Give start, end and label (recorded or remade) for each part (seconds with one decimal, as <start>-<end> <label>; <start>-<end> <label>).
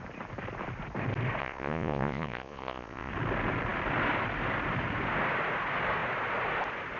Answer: 0.0-1.4 recorded; 1.4-3.1 remade; 3.1-7.0 recorded